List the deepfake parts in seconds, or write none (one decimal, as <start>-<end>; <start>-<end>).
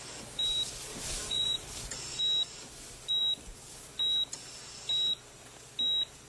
0.9-2.2